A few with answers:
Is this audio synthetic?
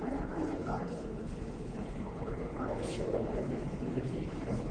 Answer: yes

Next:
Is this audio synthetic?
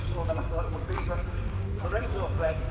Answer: yes